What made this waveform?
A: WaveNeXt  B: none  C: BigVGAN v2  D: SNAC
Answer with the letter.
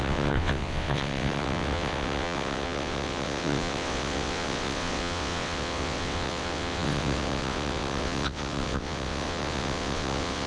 A